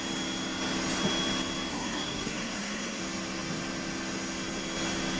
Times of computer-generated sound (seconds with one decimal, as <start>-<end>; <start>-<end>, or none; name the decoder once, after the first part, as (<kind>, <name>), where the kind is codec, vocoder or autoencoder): 1.7-3.0 (codec, SNAC)